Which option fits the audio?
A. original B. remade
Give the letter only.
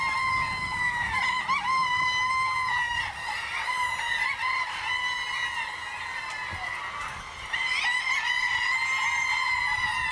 A